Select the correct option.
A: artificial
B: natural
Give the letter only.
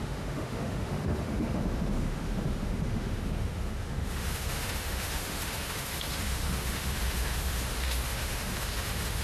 A